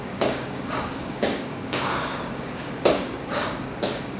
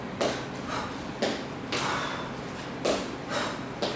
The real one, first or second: second